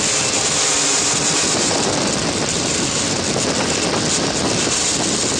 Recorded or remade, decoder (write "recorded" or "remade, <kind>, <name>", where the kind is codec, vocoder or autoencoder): remade, vocoder, BigVGAN v2